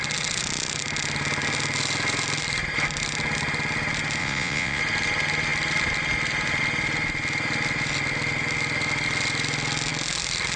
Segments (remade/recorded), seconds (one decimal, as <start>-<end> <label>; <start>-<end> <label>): 0.0-4.2 recorded; 4.2-4.8 remade; 4.8-10.6 recorded